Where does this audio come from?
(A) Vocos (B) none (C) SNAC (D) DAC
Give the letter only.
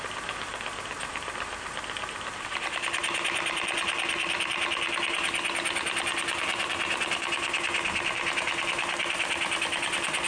B